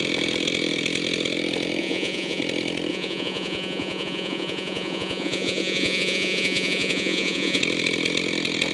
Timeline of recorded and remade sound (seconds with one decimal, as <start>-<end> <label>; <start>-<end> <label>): 0.0-1.8 recorded; 1.8-2.4 remade; 2.4-2.9 recorded; 2.9-7.6 remade; 7.6-8.7 recorded